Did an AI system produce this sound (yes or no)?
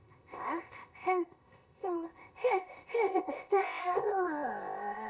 yes